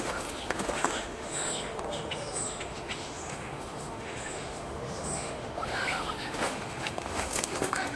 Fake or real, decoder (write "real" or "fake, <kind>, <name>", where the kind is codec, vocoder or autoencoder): fake, autoencoder, DAC-VAE